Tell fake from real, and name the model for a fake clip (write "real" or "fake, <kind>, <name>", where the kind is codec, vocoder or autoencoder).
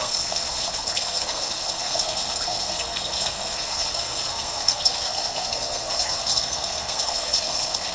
fake, codec, SNAC